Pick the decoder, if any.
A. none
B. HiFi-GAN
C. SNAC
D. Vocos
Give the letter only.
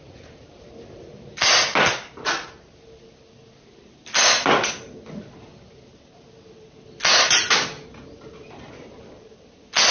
A